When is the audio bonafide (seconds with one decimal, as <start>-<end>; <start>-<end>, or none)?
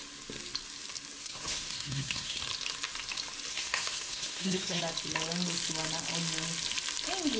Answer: 0.0-1.2; 2.4-3.5; 4.8-7.4